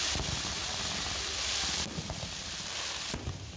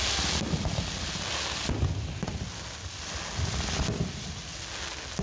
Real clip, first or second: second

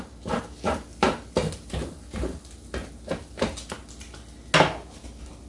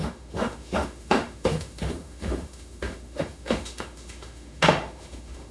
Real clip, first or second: first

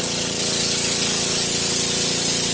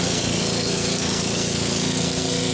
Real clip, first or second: first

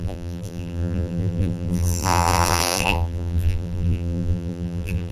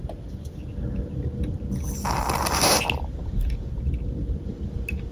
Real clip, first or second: second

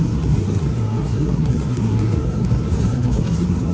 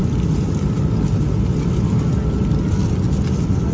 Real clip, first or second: second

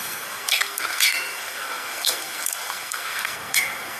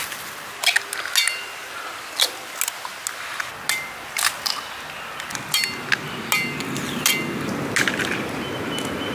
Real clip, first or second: second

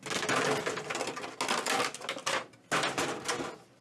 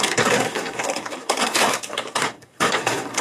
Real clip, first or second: first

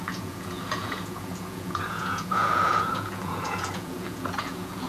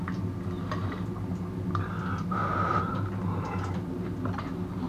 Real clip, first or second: second